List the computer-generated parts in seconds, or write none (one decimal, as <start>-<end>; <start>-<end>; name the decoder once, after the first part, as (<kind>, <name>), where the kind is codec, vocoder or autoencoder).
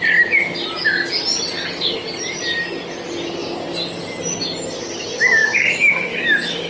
5.4-6.7 (autoencoder, DAC-VAE)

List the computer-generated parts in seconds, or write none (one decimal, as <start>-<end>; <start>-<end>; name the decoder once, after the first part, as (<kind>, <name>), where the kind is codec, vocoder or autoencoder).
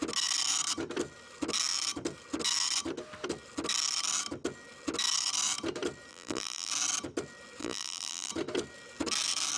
6.1-6.7 (vocoder, BigVGAN v2); 7.6-8.3